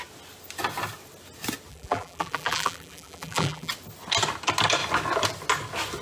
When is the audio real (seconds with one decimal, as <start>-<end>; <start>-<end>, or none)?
0.0-1.7; 3.7-6.0